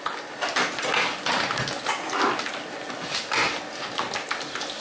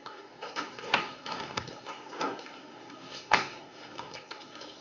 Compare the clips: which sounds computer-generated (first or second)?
second